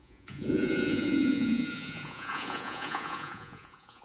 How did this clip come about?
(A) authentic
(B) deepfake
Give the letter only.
B